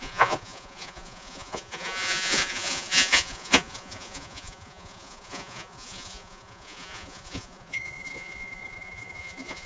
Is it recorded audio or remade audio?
remade